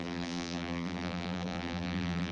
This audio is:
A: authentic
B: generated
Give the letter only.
B